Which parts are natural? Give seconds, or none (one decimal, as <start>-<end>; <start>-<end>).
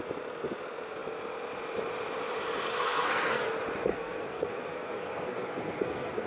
0.0-2.7; 3.5-3.9